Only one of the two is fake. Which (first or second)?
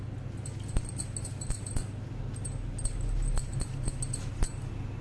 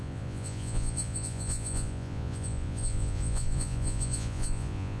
second